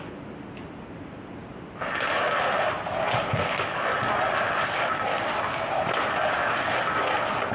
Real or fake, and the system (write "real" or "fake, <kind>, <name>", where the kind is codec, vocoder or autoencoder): real